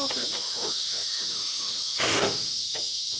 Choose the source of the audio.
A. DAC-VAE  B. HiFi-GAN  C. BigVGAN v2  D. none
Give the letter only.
A